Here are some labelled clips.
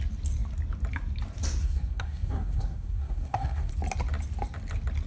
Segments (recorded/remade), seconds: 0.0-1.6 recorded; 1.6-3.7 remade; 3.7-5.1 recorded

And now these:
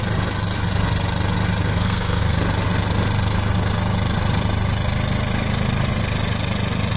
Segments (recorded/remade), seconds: 0.0-1.7 recorded; 1.7-2.4 remade; 2.4-7.0 recorded

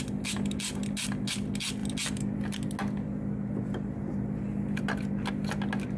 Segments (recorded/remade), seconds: 0.0-6.0 recorded